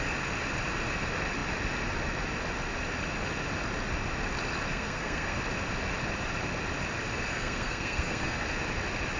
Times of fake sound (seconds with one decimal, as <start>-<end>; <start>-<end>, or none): 4.7-5.4; 7.3-8.4